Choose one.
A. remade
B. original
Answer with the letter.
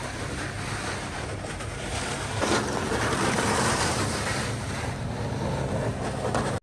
B